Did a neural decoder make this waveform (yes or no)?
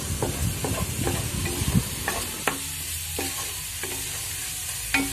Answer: no